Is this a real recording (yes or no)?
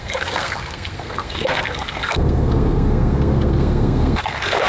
no